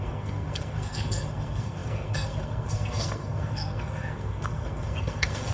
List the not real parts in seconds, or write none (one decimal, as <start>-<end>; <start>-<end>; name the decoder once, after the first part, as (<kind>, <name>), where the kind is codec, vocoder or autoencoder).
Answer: 0.0-5.5 (codec, SNAC)